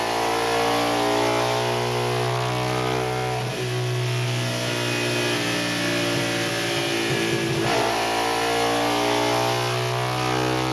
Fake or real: real